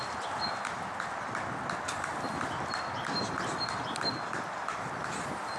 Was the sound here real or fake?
real